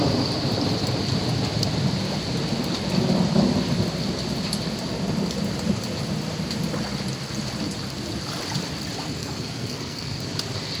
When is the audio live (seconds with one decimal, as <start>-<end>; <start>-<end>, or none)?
0.0-9.2; 10.2-10.8